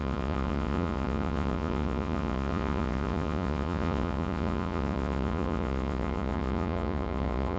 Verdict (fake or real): fake